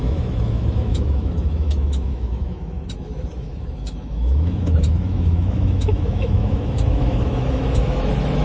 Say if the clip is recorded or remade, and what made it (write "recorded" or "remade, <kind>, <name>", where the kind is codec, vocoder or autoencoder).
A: remade, autoencoder, DAC-VAE